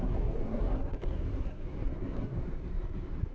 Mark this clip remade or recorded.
remade